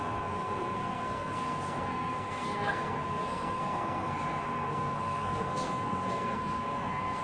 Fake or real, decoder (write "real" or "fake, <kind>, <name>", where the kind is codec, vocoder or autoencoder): fake, codec, SNAC